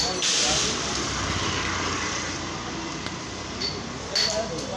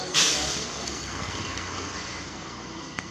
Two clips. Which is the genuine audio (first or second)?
first